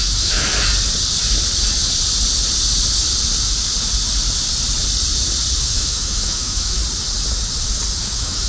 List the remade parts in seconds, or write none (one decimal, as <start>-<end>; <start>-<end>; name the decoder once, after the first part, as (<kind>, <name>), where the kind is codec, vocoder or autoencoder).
0.0-0.5 (autoencoder, DAC-VAE); 5.6-6.8; 8.0-8.5